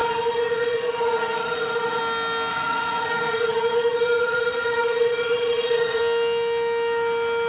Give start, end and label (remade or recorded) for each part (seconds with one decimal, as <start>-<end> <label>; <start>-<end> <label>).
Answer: 0.0-2.0 remade; 2.0-2.5 recorded; 2.5-6.0 remade; 6.0-7.5 recorded